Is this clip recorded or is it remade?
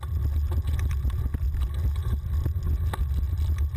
recorded